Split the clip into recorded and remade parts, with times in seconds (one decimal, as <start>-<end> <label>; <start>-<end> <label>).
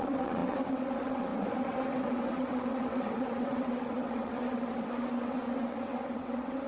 0.0-6.7 remade